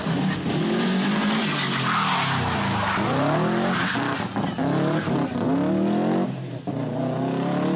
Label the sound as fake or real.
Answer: real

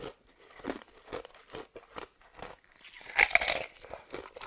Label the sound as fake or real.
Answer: real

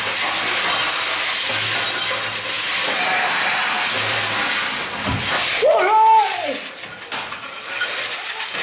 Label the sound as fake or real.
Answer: real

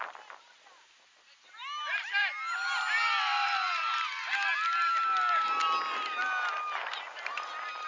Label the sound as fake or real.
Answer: real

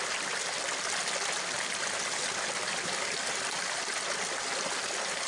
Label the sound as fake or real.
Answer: real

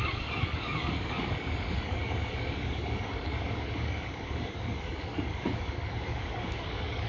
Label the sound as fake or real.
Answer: fake